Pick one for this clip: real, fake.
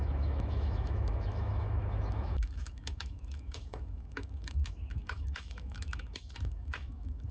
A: fake